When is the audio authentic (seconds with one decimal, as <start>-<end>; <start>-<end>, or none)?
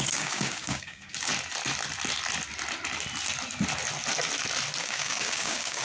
1.3-4.8